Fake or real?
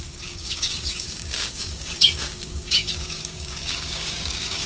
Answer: fake